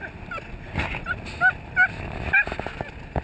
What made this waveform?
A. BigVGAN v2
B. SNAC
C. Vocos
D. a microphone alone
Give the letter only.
D